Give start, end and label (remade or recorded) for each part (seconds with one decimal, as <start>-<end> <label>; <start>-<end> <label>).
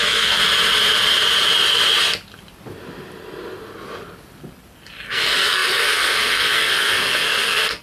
0.0-0.4 remade; 0.4-5.1 recorded; 5.1-7.8 remade